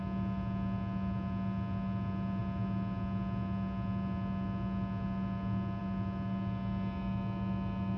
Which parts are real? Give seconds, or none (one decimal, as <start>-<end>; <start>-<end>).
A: 0.0-8.0